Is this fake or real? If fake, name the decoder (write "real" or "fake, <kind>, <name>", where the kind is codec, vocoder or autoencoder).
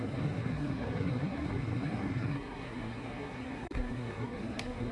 fake, codec, SNAC